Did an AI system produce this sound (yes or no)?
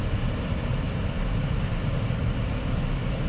no